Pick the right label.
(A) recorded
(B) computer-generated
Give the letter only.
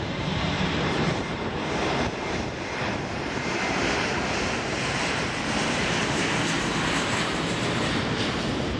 B